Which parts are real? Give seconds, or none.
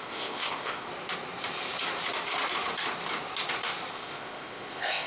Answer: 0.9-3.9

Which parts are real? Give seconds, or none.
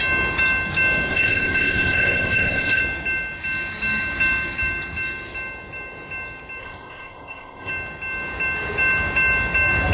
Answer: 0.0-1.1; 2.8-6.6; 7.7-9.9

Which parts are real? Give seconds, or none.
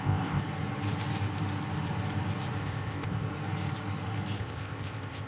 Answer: 0.4-2.6; 3.3-4.4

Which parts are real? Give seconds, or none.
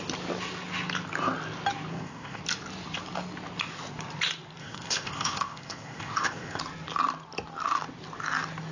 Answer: 0.0-1.9; 2.4-4.6; 6.6-8.7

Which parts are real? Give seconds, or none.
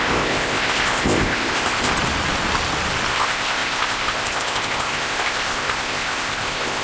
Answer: 1.9-3.1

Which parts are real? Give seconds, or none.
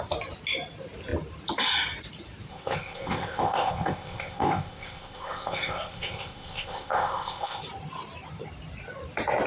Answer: 0.0-2.5; 7.6-9.5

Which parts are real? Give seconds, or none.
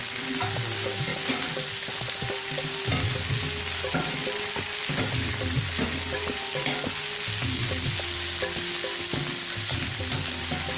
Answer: 0.0-10.8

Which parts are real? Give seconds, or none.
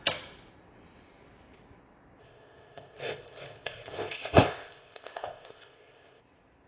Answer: 0.0-2.2; 6.2-6.7